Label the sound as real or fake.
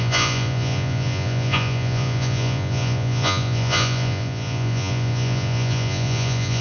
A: fake